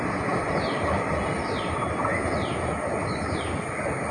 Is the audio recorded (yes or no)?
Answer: yes